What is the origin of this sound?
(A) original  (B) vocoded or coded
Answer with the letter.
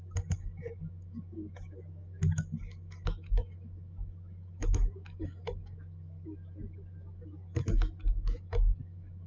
B